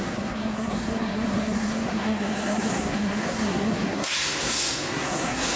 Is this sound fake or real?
fake